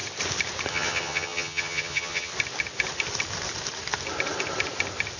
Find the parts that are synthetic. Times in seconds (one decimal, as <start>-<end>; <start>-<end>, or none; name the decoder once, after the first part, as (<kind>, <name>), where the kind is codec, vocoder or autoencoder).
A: 0.7-2.3 (vocoder, HiFi-GAN)